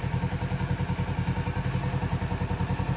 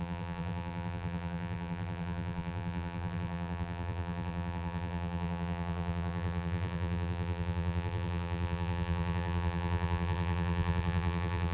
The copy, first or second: second